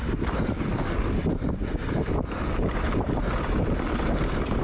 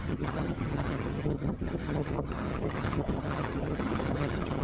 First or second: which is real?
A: first